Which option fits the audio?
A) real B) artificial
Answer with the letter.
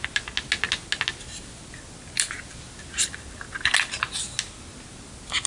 A